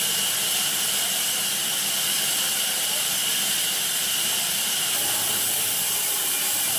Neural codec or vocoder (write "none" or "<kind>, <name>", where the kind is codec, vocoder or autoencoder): none